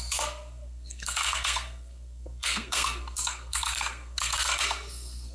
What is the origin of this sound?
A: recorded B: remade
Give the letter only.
B